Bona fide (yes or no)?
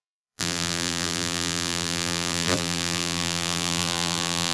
no